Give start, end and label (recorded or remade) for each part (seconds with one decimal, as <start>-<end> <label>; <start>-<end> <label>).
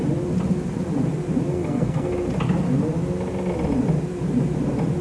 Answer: 0.0-1.5 recorded; 1.5-2.1 remade; 2.1-5.0 recorded